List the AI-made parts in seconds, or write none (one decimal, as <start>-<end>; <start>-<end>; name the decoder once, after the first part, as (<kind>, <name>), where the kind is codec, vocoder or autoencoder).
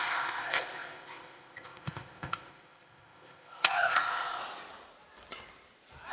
0.0-4.4 (codec, ZipCodec)